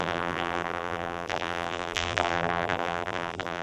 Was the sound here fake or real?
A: fake